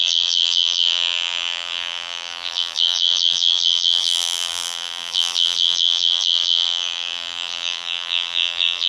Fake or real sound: fake